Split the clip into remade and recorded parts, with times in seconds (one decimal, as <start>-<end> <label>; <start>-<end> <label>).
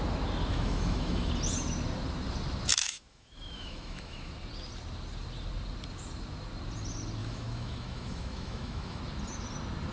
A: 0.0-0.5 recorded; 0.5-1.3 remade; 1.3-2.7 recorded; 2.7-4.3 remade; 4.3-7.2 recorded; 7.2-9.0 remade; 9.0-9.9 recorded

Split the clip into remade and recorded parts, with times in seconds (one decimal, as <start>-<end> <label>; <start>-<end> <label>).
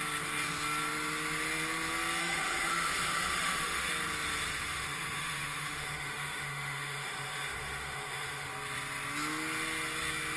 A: 0.0-2.2 recorded; 2.2-3.9 remade; 3.9-4.5 recorded; 4.5-8.5 remade; 8.5-10.4 recorded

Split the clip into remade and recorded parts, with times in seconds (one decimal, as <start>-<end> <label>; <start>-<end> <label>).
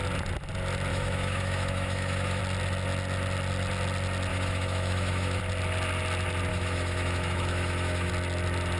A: 0.0-0.9 recorded; 0.9-2.4 remade; 2.4-4.3 recorded; 4.3-5.4 remade; 5.4-6.5 recorded; 6.5-8.1 remade; 8.1-8.8 recorded